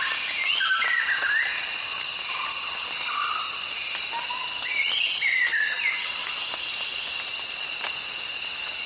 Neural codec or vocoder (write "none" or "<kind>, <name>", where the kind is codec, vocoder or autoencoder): none